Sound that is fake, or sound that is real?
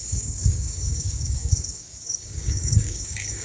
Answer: fake